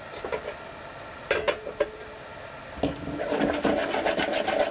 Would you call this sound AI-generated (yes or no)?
no